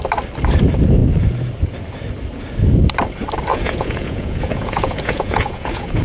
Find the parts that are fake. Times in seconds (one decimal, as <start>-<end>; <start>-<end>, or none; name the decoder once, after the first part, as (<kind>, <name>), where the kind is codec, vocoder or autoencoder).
3.5-6.0 (vocoder, Vocos)